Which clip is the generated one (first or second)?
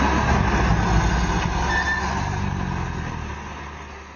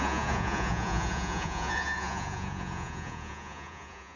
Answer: second